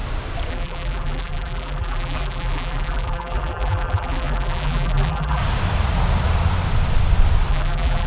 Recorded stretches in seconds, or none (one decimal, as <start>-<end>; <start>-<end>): 0.0-0.5; 5.4-7.5